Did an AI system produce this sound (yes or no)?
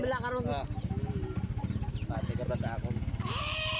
no